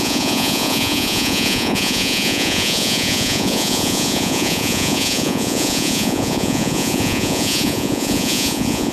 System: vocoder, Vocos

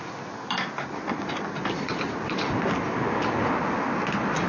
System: none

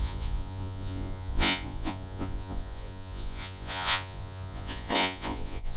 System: vocoder, Vocos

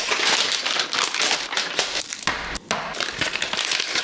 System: none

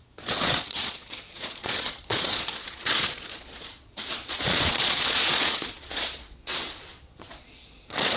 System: vocoder, Vocos